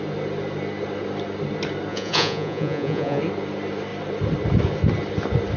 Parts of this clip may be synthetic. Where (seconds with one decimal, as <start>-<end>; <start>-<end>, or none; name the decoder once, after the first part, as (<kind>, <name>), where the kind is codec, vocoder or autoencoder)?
1.9-3.2 (vocoder, Vocos)